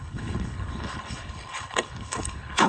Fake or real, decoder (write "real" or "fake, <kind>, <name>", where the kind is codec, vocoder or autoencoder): fake, codec, HILCodec